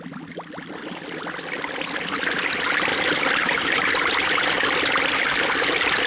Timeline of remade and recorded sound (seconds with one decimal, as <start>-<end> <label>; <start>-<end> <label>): 0.0-2.9 recorded; 2.9-5.5 remade; 5.5-6.1 recorded